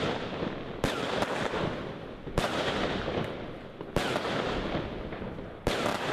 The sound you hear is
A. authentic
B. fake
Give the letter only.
A